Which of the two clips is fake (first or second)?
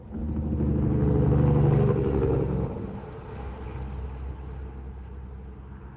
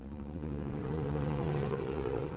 second